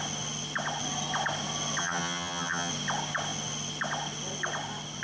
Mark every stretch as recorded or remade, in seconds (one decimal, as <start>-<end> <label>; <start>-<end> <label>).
0.0-1.8 recorded; 1.8-2.7 remade; 2.7-5.0 recorded